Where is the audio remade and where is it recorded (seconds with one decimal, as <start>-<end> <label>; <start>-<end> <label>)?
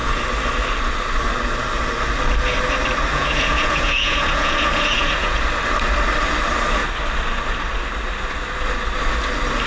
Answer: 0.0-3.1 recorded; 3.1-5.4 remade; 5.4-9.7 recorded